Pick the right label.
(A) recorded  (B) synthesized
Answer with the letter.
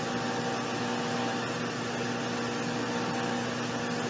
A